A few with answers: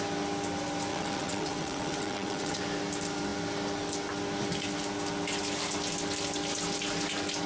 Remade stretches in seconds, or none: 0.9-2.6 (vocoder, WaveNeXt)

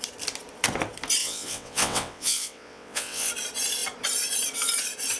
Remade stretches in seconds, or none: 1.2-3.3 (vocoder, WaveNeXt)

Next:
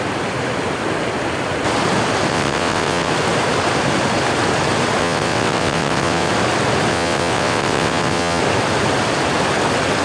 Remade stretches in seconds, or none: 2.3-3.1 (vocoder, WaveNeXt); 5.0-6.3; 6.9-8.4

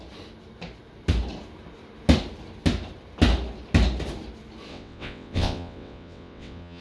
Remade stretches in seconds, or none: 4.7-6.8 (vocoder, WaveNeXt)